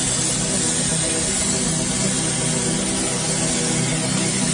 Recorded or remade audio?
recorded